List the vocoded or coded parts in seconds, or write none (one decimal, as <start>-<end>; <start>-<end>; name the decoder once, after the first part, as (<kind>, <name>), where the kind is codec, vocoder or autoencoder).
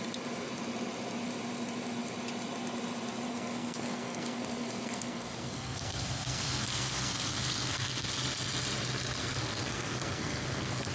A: 3.3-8.1 (codec, SNAC); 9.2-10.9